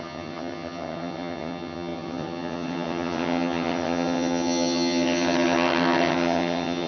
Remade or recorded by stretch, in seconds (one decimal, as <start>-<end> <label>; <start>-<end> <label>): 0.0-6.9 remade